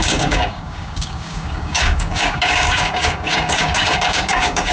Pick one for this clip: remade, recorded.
remade